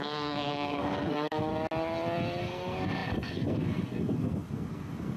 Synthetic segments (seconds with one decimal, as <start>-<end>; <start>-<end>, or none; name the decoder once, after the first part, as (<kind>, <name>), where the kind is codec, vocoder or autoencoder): 0.0-1.5 (codec, SNAC); 2.4-5.2